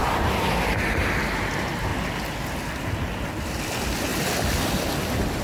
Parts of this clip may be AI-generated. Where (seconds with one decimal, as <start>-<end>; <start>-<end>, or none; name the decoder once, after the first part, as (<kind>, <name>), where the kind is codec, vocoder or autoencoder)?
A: 0.0-1.5 (vocoder, BigVGAN v2)